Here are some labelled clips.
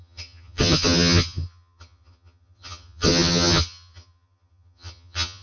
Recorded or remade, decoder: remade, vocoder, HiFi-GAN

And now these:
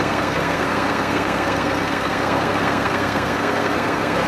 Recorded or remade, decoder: remade, codec, SNAC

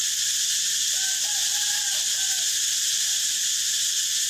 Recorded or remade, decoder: remade, vocoder, BigVGAN v2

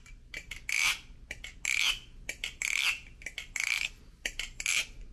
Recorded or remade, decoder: recorded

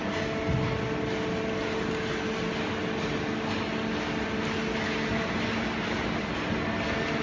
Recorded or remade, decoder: recorded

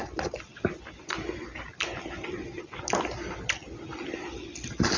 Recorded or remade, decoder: recorded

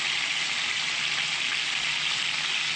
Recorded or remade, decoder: recorded